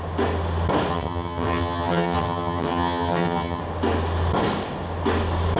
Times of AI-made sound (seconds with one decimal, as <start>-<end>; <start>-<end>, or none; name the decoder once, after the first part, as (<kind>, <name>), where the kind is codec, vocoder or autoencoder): 0.9-3.6 (vocoder, HiFi-GAN)